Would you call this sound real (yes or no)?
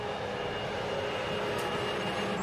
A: yes